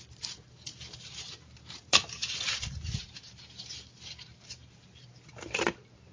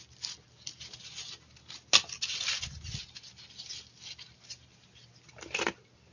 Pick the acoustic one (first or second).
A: second